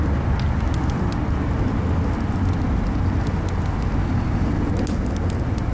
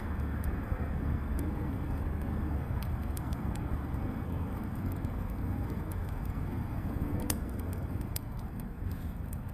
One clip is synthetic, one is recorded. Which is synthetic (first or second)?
second